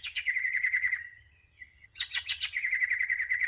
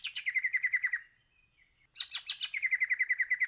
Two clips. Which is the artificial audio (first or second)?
first